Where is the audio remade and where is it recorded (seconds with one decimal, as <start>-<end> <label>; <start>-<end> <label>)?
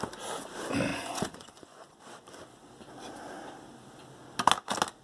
0.0-0.9 recorded; 0.9-2.0 remade; 2.0-5.0 recorded